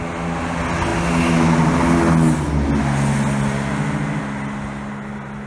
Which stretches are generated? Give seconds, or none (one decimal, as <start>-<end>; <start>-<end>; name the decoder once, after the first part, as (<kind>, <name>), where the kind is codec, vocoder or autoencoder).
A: none